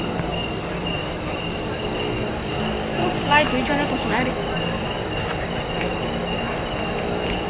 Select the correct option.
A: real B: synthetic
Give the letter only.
A